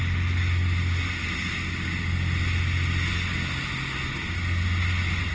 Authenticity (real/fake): real